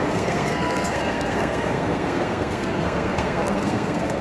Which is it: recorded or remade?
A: remade